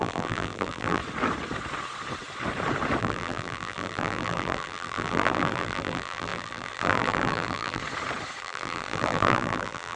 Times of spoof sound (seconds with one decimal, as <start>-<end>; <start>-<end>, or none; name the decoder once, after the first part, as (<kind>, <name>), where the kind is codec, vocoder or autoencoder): 0.0-1.0 (vocoder, BigVGAN v2); 3.0-7.8; 8.4-10.0